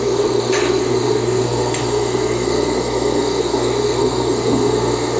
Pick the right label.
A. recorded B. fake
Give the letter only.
B